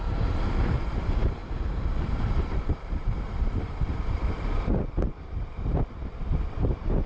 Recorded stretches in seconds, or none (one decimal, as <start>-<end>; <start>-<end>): 1.4-2.1